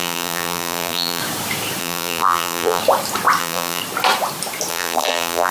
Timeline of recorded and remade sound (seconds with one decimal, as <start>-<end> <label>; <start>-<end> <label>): 0.0-1.2 remade; 1.2-1.8 recorded; 1.8-2.8 remade; 2.8-3.4 recorded; 3.4-3.8 remade; 3.8-4.7 recorded; 4.7-5.5 remade